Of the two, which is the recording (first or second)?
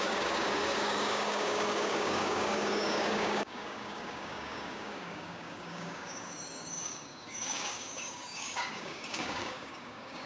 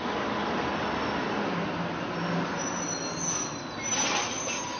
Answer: second